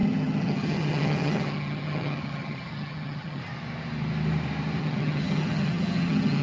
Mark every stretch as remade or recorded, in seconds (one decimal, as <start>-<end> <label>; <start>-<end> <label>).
0.0-3.4 remade; 3.4-4.8 recorded; 4.8-6.4 remade